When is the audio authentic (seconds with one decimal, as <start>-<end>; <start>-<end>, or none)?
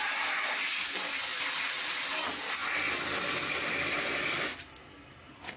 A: 0.0-5.6